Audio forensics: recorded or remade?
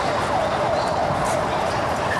recorded